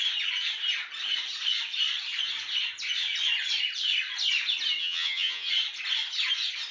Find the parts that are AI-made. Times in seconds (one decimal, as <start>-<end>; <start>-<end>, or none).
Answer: 4.8-5.5